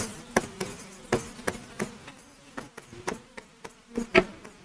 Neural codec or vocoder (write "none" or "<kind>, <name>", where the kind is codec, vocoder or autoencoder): none